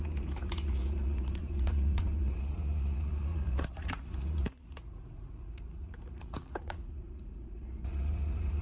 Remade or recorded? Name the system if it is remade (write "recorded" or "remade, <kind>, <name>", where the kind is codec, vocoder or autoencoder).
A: remade, vocoder, Vocos